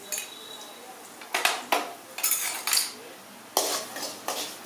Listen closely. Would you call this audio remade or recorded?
recorded